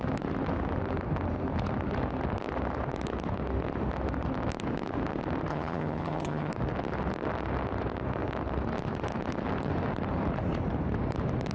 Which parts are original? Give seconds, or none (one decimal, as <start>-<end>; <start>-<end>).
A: 0.0-5.5; 6.5-11.5